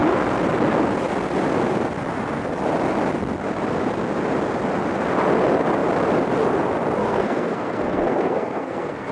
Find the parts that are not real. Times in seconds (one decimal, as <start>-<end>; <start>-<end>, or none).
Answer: 7.0-9.1